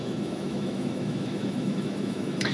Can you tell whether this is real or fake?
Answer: fake